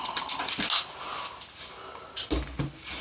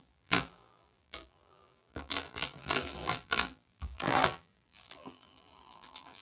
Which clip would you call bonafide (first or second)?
first